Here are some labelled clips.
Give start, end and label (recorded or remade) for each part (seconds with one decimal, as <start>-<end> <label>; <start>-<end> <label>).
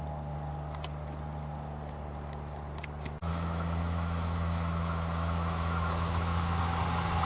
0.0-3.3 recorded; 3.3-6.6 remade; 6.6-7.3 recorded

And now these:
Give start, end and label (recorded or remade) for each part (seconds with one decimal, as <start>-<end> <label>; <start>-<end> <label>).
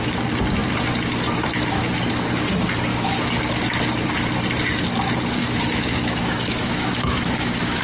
0.0-2.9 recorded; 2.9-3.4 remade; 3.4-5.4 recorded; 5.4-7.8 remade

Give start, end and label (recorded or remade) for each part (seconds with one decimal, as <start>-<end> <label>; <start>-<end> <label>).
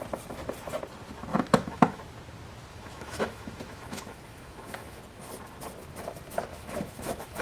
0.0-1.3 recorded; 1.3-2.0 remade; 2.0-2.7 recorded; 2.7-5.0 remade; 5.0-6.5 recorded; 6.5-7.4 remade